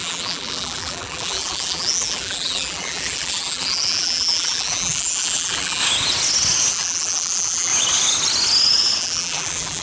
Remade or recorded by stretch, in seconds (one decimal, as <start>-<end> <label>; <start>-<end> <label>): 0.0-5.8 remade; 5.8-6.7 recorded; 6.7-7.7 remade; 7.7-9.0 recorded; 9.0-9.8 remade